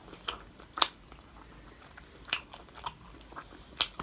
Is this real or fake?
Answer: real